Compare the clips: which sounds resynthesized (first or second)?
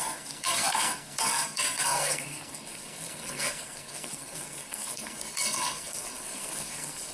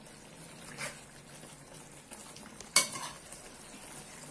first